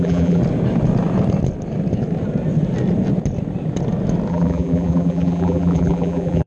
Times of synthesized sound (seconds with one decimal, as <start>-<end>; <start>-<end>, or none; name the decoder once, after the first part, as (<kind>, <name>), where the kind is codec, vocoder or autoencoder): 0.0-0.4 (vocoder, BigVGAN v2); 4.3-6.5